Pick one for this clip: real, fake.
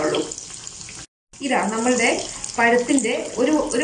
real